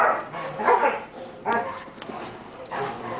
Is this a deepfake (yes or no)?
no